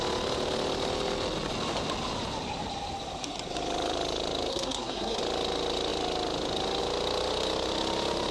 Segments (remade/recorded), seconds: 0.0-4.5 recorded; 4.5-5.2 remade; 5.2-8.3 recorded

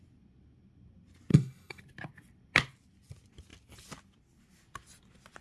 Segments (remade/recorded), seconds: 0.0-1.3 recorded; 1.3-1.8 remade; 1.8-5.4 recorded

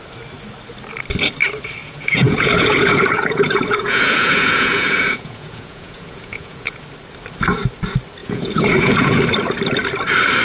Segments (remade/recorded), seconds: 0.0-1.8 recorded; 1.8-6.8 remade; 6.8-8.2 recorded; 8.2-9.2 remade; 9.2-10.4 recorded

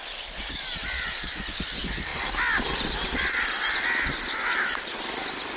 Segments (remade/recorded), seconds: 0.0-1.4 remade; 1.4-5.6 recorded

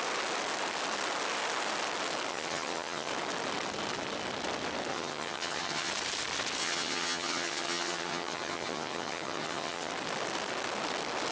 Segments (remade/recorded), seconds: 0.0-2.3 recorded; 2.3-3.1 remade; 3.1-4.9 recorded; 4.9-5.9 remade; 5.9-6.6 recorded; 6.6-9.9 remade; 9.9-11.3 recorded

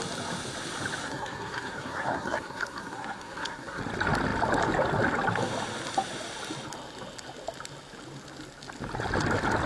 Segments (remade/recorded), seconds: 0.0-1.0 recorded; 1.0-3.8 remade; 3.8-9.7 recorded